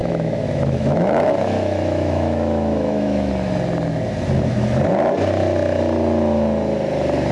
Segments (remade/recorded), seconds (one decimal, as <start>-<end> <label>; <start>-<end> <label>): 0.0-3.3 remade; 3.3-7.3 recorded